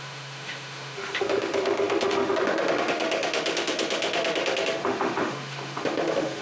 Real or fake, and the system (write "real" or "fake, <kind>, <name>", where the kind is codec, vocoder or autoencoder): fake, autoencoder, DAC-VAE